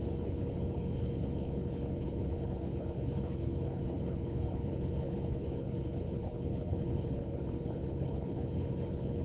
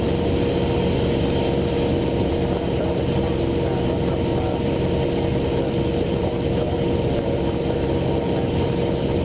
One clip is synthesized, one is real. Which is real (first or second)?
second